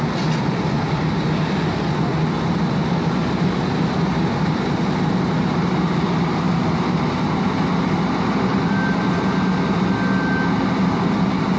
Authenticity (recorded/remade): recorded